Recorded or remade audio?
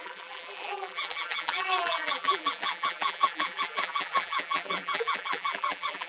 remade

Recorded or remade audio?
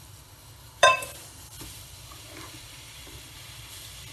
remade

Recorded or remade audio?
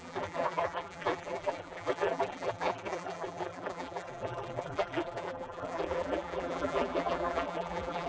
remade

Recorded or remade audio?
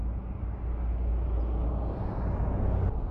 recorded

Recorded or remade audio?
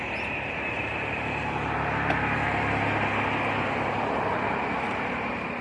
recorded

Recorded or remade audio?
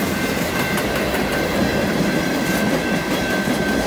remade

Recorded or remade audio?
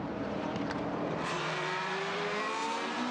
remade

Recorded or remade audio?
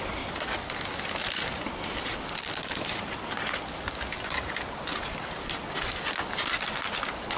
recorded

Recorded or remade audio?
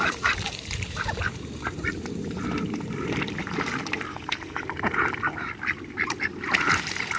remade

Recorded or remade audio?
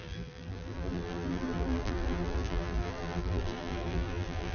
remade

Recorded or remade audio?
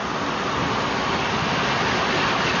remade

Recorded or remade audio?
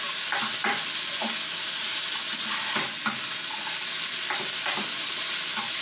recorded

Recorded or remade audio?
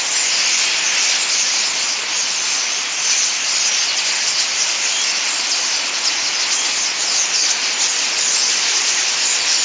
recorded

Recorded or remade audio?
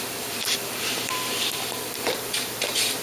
remade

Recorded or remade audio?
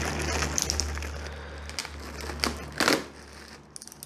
recorded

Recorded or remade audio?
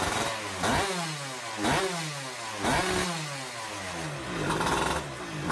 recorded